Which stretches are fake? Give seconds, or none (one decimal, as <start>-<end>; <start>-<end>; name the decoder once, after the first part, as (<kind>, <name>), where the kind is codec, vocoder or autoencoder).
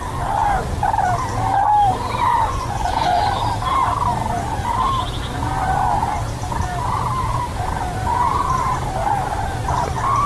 2.3-3.2 (vocoder, Vocos)